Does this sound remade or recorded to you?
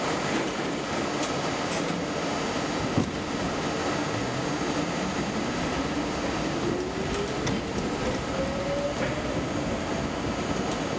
recorded